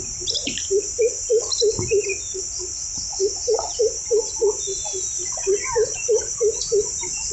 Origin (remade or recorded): recorded